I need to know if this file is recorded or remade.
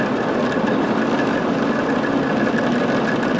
recorded